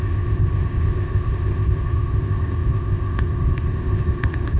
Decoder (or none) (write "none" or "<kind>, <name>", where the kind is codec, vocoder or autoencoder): codec, ZipCodec